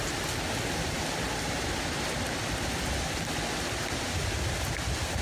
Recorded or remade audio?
recorded